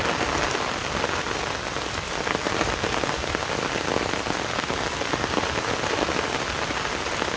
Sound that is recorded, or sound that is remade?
recorded